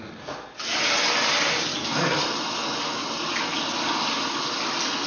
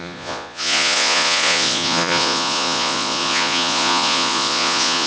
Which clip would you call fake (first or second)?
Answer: second